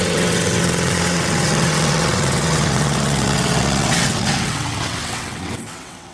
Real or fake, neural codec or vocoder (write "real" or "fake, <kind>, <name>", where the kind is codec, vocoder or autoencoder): fake, vocoder, WaveNeXt